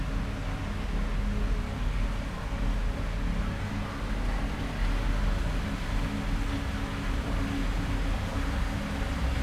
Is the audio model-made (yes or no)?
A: no